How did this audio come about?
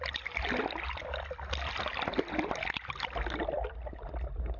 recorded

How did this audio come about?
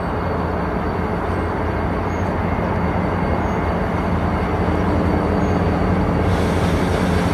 recorded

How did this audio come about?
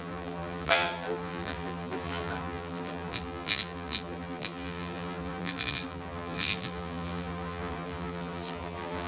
remade